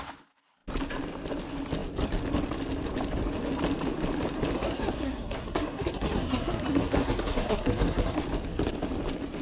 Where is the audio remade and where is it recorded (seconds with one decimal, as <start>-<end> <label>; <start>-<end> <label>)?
0.0-4.5 recorded; 4.5-8.2 remade; 8.2-9.4 recorded